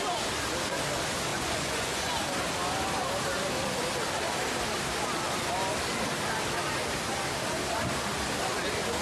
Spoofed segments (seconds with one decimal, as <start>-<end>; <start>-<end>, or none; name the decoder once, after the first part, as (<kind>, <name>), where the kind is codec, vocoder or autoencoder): 1.3-2.1 (vocoder, Vocos)